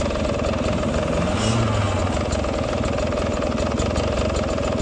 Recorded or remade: recorded